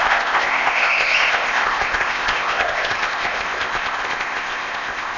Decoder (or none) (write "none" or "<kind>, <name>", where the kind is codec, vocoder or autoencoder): codec, ZipCodec